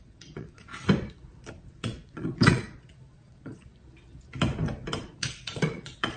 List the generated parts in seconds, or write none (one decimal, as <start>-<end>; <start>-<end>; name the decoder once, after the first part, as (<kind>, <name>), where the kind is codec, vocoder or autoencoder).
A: 0.0-0.7 (vocoder, Vocos); 1.5-3.7; 5.0-6.2

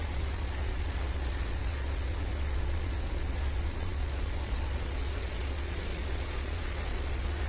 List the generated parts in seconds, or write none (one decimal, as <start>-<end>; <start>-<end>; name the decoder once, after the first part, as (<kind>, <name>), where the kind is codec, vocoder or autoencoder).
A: 0.0-7.5 (vocoder, Vocos)

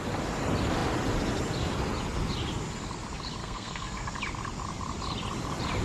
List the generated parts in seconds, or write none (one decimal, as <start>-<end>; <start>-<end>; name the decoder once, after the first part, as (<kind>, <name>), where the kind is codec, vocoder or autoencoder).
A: 3.4-4.1 (codec, SNAC)

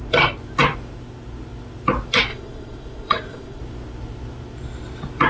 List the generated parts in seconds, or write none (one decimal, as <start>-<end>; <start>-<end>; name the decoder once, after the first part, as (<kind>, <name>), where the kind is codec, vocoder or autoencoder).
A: 2.3-3.6 (vocoder, Vocos)

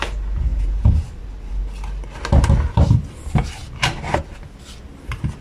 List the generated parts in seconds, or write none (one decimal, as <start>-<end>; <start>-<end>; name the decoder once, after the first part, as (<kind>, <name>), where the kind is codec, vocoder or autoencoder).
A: 0.5-1.6 (vocoder, BigVGAN v2)

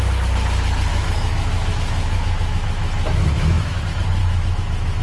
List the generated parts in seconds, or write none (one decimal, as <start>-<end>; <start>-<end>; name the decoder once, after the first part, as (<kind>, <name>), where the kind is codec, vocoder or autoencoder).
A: 0.9-3.8 (autoencoder, DAC-VAE); 4.2-5.0

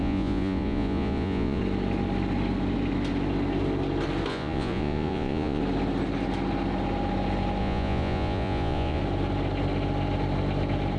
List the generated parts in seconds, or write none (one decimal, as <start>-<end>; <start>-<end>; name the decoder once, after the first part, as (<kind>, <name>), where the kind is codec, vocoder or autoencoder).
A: 0.0-1.6 (vocoder, Vocos); 4.3-5.6; 7.6-9.0